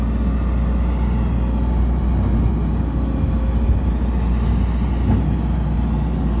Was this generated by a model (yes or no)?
no